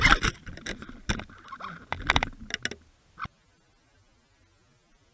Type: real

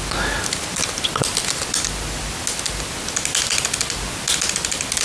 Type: real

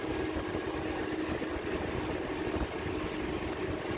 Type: real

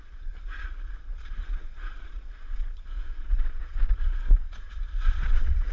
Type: fake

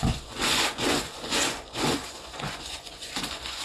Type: fake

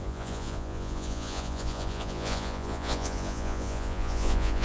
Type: fake